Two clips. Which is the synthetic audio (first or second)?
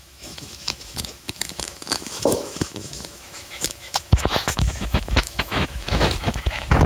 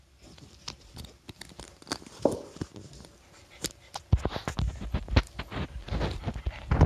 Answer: first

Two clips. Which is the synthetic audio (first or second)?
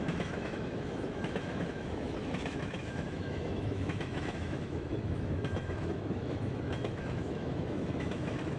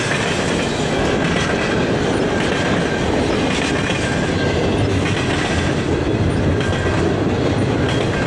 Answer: first